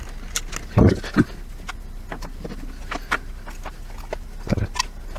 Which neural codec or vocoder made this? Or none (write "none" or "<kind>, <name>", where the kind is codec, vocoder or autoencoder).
none